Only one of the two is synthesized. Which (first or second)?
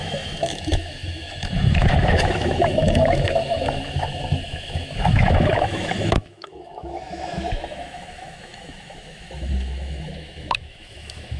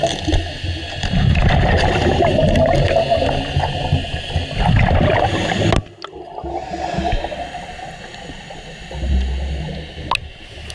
first